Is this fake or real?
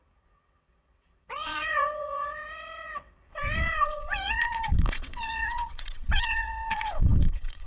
fake